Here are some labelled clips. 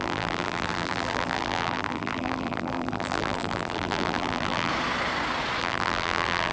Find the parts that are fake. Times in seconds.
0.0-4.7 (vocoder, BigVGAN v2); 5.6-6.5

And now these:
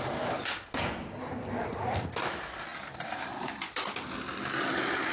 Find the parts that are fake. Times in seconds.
none